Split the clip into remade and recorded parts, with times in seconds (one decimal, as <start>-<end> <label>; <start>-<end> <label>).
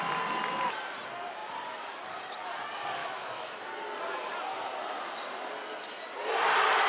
0.0-3.0 recorded; 3.0-3.6 remade; 3.6-6.9 recorded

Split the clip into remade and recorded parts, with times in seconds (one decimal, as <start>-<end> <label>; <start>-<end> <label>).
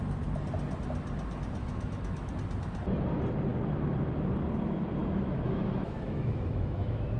0.0-1.6 recorded; 1.6-2.3 remade; 2.3-5.0 recorded; 5.0-7.2 remade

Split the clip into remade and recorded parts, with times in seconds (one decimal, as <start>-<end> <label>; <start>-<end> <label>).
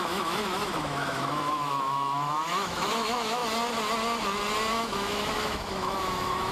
0.0-3.4 remade; 3.4-4.7 recorded; 4.7-6.5 remade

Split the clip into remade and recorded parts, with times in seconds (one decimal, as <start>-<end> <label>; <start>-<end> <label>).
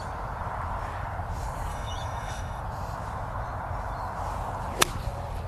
0.0-1.7 recorded; 1.7-2.6 remade; 2.6-5.5 recorded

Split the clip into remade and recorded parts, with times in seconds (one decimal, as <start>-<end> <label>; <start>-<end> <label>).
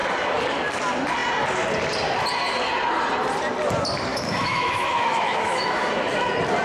0.0-4.1 recorded; 4.1-5.9 remade; 5.9-6.6 recorded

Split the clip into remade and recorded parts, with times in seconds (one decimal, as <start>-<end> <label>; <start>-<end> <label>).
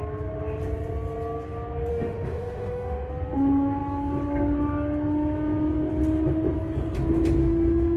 0.0-1.9 recorded; 1.9-3.1 remade; 3.1-7.4 recorded; 7.4-8.0 remade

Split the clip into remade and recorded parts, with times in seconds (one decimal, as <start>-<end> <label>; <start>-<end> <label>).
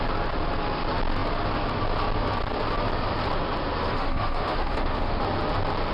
0.0-3.8 recorded; 3.8-5.2 remade; 5.2-5.9 recorded